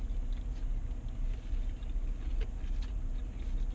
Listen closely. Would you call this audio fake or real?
real